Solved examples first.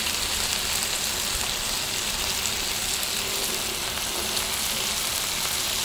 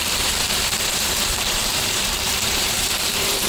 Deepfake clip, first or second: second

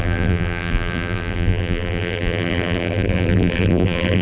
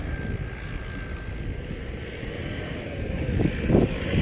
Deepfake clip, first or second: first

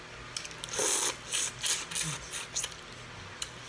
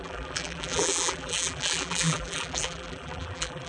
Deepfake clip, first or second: second